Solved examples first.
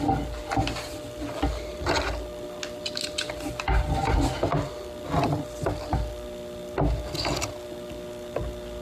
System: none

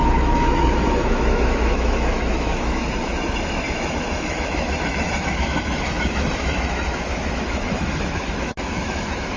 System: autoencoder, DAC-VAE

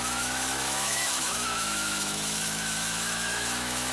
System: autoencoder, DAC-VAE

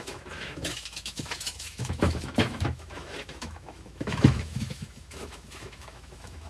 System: autoencoder, DAC-VAE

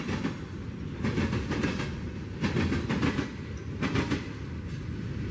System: none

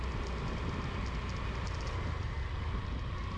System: none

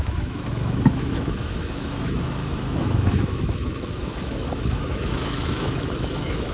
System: autoencoder, DAC-VAE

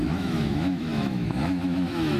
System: autoencoder, DAC-VAE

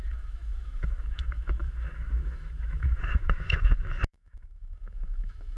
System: autoencoder, DAC-VAE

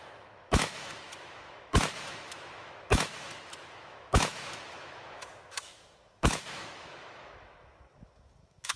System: autoencoder, DAC-VAE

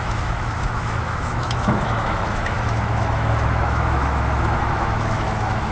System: autoencoder, DAC-VAE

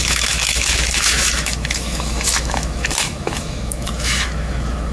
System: autoencoder, DAC-VAE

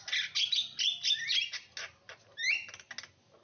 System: none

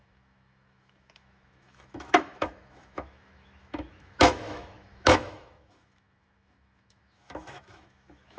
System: autoencoder, DAC-VAE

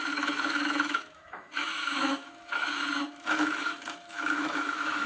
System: autoencoder, DAC-VAE